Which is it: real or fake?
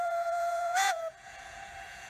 fake